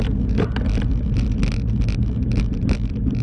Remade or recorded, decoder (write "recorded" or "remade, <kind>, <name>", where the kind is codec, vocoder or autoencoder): recorded